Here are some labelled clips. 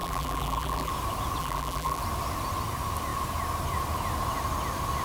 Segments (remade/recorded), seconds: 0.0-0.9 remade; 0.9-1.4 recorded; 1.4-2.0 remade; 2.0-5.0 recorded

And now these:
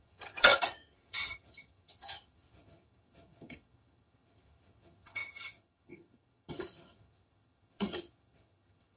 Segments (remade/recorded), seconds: 0.0-9.0 remade

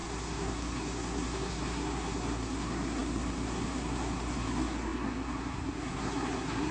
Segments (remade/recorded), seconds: 0.0-6.7 remade

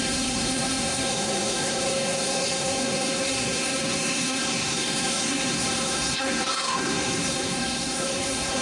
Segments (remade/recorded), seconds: 0.0-8.6 remade

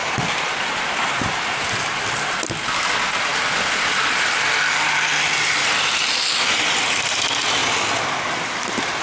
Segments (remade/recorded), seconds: 0.0-2.1 remade; 2.1-9.0 recorded

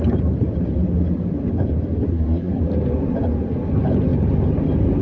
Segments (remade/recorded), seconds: 0.0-2.1 recorded; 2.1-2.6 remade; 2.6-5.0 recorded

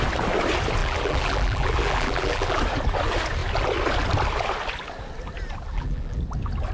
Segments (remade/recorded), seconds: 0.0-0.8 recorded; 0.8-2.6 remade; 2.6-5.7 recorded; 5.7-6.2 remade; 6.2-6.7 recorded

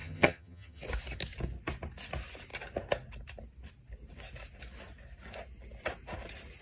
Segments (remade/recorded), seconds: 0.0-0.8 remade; 0.8-6.6 recorded